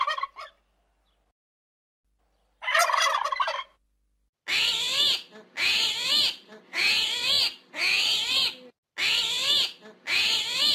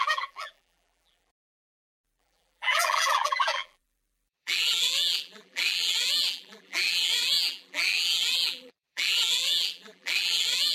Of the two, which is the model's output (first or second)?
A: second